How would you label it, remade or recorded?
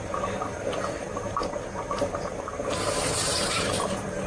remade